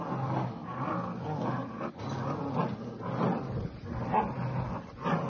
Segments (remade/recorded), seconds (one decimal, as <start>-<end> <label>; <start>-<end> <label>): 0.0-5.3 recorded